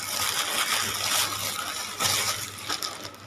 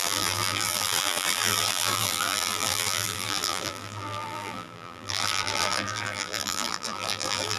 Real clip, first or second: first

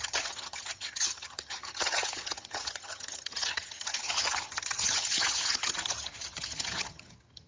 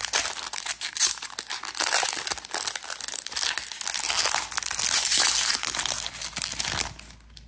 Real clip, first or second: second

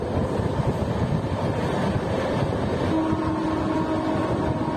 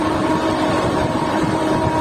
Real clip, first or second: first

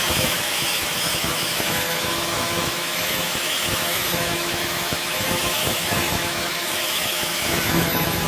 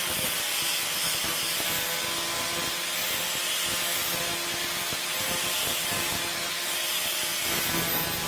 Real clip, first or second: second